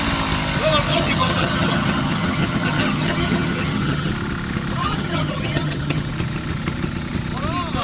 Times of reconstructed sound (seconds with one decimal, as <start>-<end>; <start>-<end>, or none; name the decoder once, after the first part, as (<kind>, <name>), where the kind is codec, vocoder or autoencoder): 0.9-4.1 (vocoder, HiFi-GAN); 4.8-6.1